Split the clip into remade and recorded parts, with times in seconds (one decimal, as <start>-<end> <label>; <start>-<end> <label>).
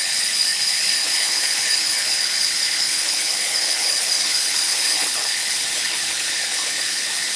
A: 0.0-7.4 remade